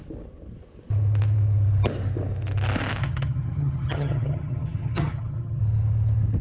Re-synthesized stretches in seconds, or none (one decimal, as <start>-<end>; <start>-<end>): 3.0-5.6